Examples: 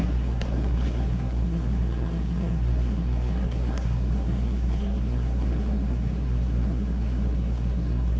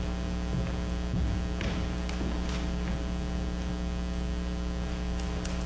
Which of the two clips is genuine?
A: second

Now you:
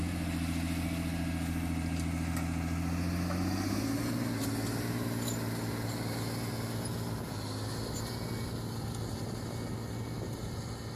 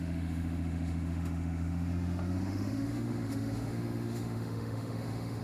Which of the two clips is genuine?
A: first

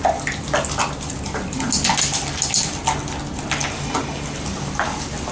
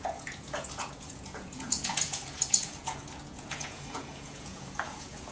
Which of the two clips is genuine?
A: first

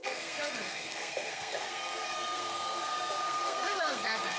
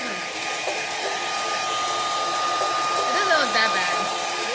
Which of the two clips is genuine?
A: second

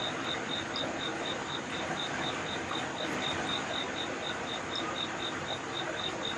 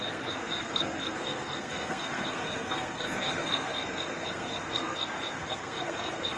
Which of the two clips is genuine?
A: first